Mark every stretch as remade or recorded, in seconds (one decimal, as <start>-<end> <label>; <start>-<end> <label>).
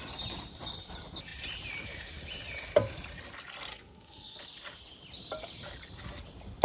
0.0-3.7 recorded; 3.7-4.4 remade; 4.4-6.6 recorded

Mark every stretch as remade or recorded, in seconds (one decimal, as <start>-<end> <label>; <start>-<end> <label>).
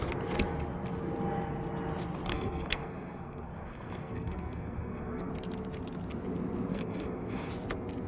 0.0-2.3 recorded; 2.3-5.3 remade; 5.3-6.7 recorded; 6.7-7.5 remade; 7.5-8.1 recorded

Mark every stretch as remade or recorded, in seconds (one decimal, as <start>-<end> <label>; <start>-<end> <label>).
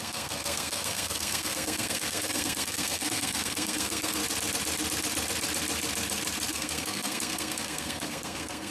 0.0-4.2 remade; 4.2-6.5 recorded; 6.5-8.7 remade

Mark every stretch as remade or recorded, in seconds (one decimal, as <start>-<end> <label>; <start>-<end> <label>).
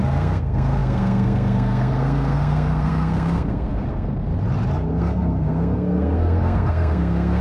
0.0-4.3 remade; 4.3-4.9 recorded; 4.9-7.4 remade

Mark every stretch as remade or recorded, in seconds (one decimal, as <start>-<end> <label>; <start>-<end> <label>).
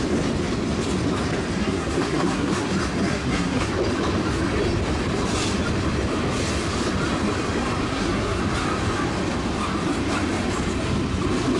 0.0-1.6 recorded; 1.6-2.7 remade; 2.7-3.1 recorded; 3.1-3.7 remade; 3.7-7.9 recorded; 7.9-8.4 remade; 8.4-11.6 recorded